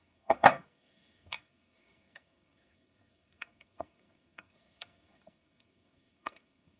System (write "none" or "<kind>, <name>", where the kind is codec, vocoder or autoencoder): codec, SNAC